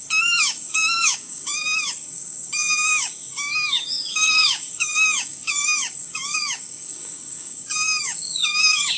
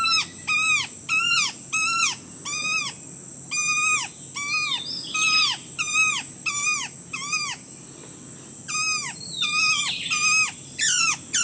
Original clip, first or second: second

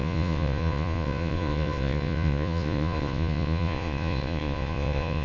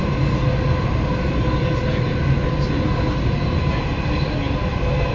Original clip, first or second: second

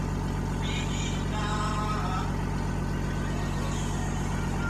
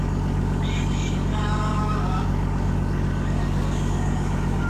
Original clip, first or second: first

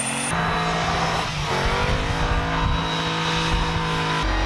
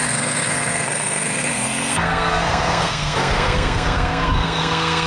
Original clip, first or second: first